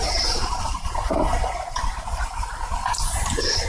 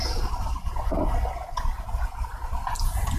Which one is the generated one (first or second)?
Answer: first